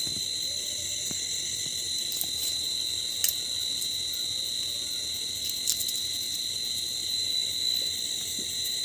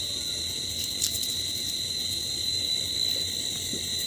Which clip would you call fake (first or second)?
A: second